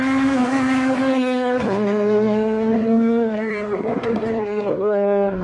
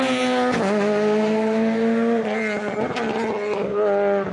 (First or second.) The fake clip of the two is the first